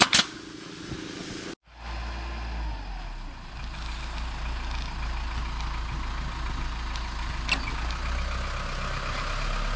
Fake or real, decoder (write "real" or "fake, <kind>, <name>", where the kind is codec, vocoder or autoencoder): real